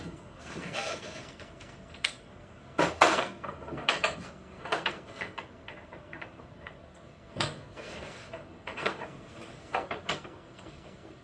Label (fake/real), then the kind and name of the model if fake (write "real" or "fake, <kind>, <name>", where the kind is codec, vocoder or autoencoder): fake, codec, SNAC